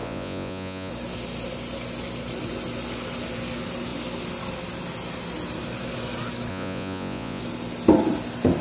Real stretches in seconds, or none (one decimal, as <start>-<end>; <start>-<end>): 0.9-6.5; 7.4-8.6